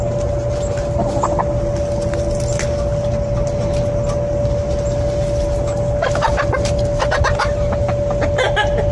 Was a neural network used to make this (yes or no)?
no